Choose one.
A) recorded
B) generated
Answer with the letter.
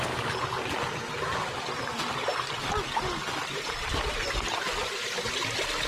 A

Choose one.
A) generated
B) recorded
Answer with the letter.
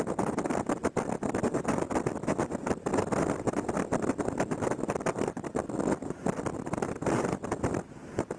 B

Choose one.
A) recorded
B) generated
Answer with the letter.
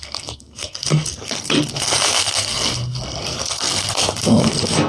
B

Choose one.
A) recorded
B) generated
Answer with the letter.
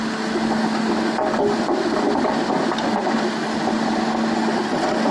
A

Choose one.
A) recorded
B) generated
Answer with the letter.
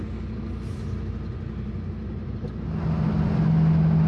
A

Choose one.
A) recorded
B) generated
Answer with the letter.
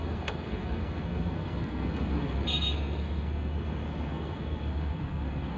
B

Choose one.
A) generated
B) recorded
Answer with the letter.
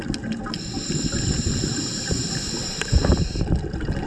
B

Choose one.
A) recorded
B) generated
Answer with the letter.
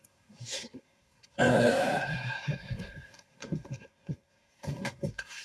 B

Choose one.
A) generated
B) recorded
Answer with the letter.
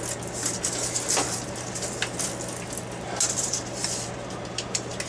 B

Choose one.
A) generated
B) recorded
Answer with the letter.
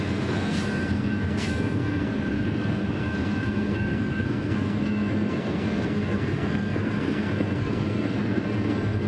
A